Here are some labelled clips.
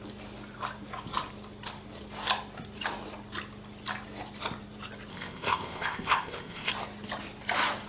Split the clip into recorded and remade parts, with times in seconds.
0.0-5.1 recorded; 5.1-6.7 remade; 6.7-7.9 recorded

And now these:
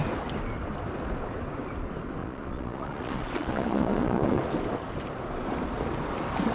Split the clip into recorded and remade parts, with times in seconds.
0.0-2.2 recorded; 2.2-4.4 remade; 4.4-6.5 recorded

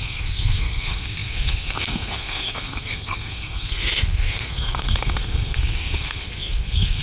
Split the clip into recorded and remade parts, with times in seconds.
0.0-7.0 remade

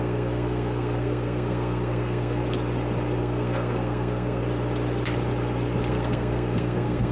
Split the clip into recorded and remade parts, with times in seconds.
0.0-2.4 remade; 2.4-3.2 recorded; 3.2-4.4 remade; 4.4-5.9 recorded; 5.9-7.1 remade

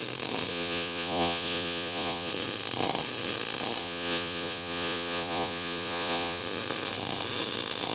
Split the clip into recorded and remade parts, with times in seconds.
0.0-0.5 recorded; 0.5-2.3 remade; 2.3-3.8 recorded; 3.8-6.4 remade; 6.4-7.9 recorded

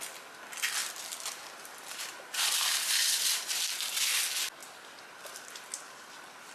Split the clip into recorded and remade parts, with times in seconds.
0.0-0.8 recorded; 0.8-3.6 remade; 3.6-6.5 recorded